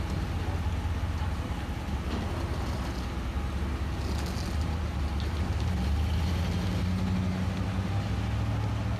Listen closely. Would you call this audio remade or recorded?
recorded